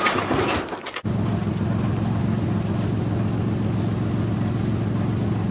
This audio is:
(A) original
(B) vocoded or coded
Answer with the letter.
A